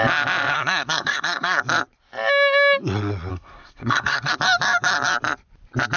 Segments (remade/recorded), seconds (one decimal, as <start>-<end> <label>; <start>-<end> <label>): 0.0-0.5 recorded; 0.5-1.6 remade; 1.6-3.3 recorded; 3.3-4.3 remade; 4.3-6.0 recorded